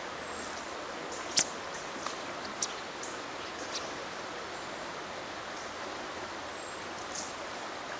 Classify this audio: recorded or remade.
recorded